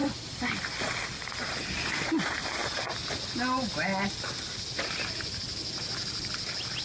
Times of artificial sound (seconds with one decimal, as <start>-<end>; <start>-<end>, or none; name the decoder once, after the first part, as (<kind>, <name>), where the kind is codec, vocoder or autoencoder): none